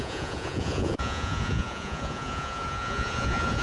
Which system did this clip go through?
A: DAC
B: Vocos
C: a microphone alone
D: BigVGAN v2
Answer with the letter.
B